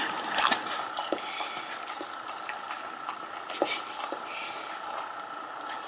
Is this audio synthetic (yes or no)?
no